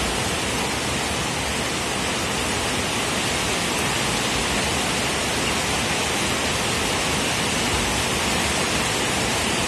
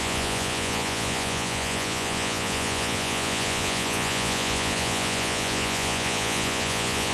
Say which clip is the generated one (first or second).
second